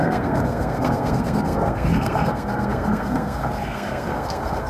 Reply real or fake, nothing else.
fake